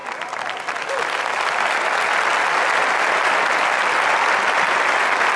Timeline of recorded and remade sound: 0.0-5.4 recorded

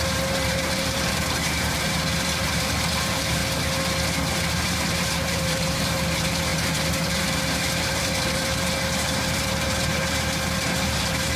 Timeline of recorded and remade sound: 0.0-3.4 remade; 3.4-4.3 recorded; 4.3-11.4 remade

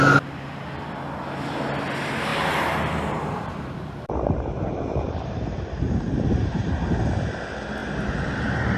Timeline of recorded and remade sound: 0.0-2.3 recorded; 2.3-6.7 remade; 6.7-7.8 recorded; 7.8-8.8 remade

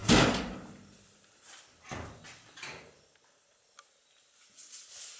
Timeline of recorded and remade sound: 0.0-3.1 remade; 3.1-5.2 recorded